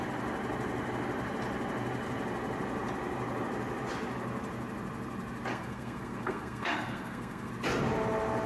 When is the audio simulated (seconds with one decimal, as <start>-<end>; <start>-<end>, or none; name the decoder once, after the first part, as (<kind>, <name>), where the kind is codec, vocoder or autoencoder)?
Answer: 5.5-7.5 (codec, SNAC)